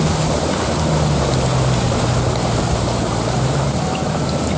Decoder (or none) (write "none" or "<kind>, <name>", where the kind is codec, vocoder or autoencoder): none